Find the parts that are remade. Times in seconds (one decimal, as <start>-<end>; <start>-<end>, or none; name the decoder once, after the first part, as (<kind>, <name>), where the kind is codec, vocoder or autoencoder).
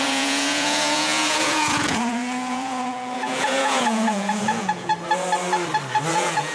0.0-4.9 (vocoder, Vocos); 6.1-6.5